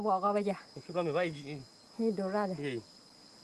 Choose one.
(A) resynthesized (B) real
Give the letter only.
B